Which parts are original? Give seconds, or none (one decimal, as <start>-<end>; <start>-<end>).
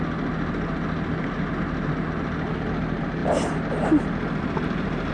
0.0-3.2